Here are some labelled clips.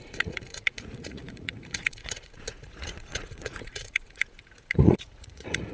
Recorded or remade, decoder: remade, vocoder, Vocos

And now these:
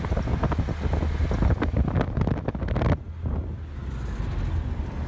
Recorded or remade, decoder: recorded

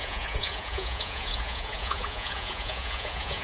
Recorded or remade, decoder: remade, vocoder, Vocos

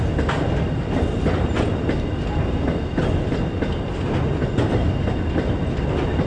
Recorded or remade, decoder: recorded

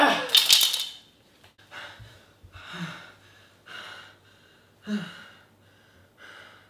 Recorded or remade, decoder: recorded